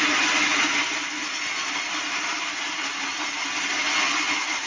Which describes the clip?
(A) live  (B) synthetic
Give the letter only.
A